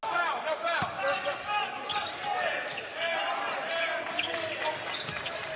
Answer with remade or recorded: recorded